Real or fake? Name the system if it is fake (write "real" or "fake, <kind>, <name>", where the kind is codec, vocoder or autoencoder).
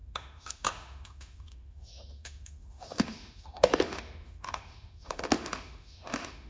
fake, autoencoder, DAC-VAE